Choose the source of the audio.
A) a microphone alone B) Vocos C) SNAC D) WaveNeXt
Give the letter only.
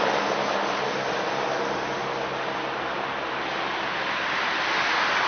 A